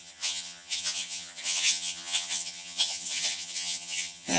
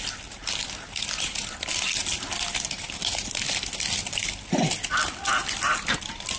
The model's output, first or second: first